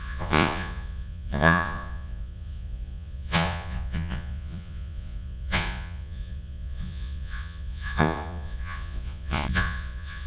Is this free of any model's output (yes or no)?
no